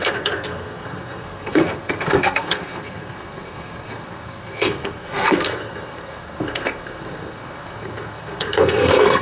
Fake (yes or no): yes